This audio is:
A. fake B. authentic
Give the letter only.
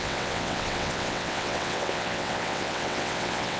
A